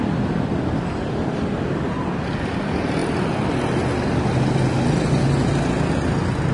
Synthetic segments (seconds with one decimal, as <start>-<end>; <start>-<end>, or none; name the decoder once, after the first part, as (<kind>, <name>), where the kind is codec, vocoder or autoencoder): none